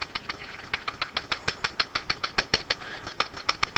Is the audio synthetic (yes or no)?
no